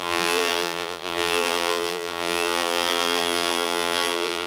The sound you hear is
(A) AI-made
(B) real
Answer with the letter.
A